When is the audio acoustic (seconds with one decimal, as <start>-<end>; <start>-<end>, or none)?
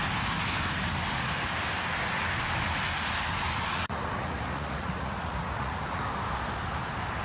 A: 0.0-3.7; 6.0-7.2